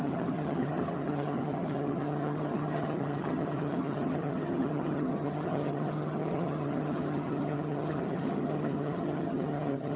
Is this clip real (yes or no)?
no